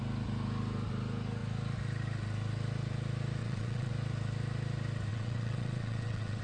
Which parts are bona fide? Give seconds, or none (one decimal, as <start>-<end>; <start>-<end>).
0.0-3.4; 3.9-5.1